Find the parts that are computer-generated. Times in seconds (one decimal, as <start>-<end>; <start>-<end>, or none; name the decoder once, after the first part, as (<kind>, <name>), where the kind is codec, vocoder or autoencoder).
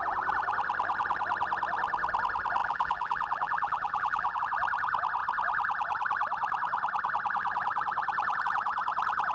2.6-4.4 (vocoder, BigVGAN v2)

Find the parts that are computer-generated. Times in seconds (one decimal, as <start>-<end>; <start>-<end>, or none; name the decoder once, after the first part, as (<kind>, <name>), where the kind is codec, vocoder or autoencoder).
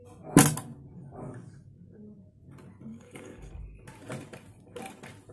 2.9-3.5 (codec, DAC)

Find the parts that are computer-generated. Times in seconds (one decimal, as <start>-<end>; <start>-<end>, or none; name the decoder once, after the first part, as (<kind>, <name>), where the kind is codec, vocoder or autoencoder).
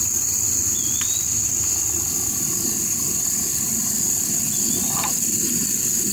0.0-1.5 (vocoder, BigVGAN v2); 5.1-6.1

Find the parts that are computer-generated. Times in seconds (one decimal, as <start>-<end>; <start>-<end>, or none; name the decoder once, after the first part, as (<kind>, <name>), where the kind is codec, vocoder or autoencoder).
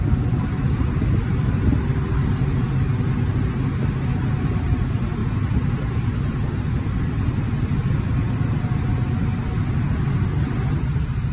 none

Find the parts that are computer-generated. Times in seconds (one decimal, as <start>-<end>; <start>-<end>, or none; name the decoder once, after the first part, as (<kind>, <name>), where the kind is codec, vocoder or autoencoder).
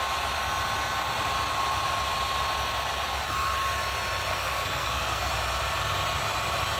4.3-5.3 (codec, SNAC)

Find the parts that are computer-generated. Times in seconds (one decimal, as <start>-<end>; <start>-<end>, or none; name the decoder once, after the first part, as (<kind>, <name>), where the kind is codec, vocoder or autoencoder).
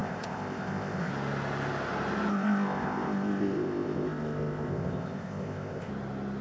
0.0-1.1 (codec, ZipCodec); 2.3-5.9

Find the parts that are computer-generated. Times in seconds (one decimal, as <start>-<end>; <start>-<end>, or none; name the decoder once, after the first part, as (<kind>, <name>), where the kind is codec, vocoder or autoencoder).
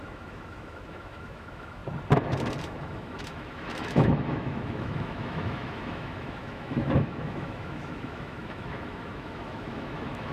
0.0-1.8 (autoencoder, DAC-VAE); 2.6-10.3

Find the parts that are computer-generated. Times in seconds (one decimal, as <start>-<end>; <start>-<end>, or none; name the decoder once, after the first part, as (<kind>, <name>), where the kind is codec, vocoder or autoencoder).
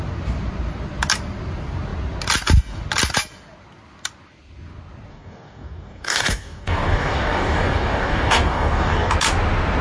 5.1-9.1 (codec, DAC)